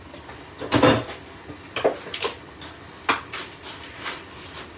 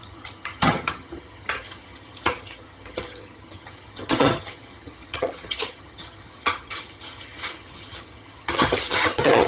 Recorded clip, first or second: first